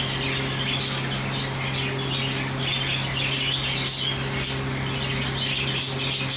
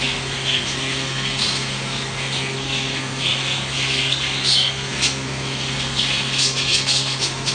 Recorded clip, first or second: first